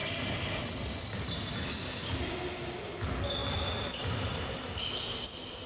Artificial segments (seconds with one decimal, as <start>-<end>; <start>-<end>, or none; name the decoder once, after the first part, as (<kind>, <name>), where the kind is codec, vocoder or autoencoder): none